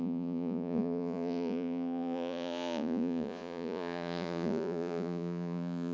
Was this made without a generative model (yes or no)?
no